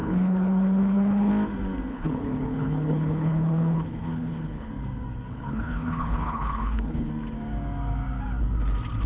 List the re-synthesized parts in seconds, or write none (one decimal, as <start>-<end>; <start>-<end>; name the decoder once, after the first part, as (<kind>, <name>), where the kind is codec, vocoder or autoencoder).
0.0-1.3 (codec, HILCodec); 1.9-4.7; 5.3-7.1